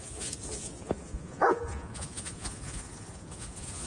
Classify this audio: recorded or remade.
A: remade